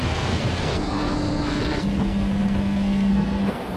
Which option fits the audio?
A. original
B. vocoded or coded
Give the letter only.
B